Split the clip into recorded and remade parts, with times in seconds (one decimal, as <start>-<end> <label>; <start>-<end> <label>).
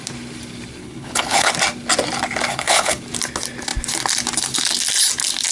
0.0-0.8 recorded; 0.8-1.5 remade; 1.5-2.5 recorded; 2.5-3.0 remade; 3.0-5.5 recorded